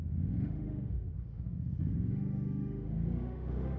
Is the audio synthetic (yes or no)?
yes